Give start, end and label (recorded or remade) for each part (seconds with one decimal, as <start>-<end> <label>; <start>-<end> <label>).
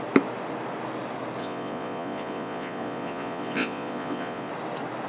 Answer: 0.0-1.4 recorded; 1.4-4.5 remade; 4.5-5.1 recorded